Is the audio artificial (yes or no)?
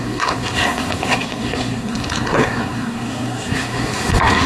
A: yes